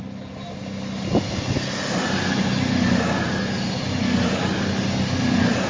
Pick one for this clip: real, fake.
real